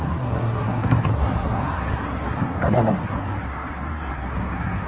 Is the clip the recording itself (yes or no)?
no